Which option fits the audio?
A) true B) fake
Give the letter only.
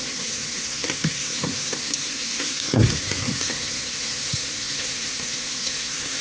B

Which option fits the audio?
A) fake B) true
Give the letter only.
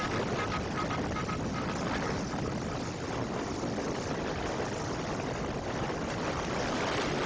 B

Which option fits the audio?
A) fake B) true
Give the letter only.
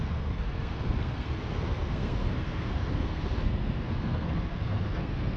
A